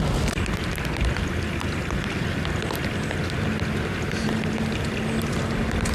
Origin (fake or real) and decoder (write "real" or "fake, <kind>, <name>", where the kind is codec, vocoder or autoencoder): real